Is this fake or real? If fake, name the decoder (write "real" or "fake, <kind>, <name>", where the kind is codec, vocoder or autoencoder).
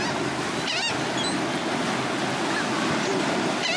real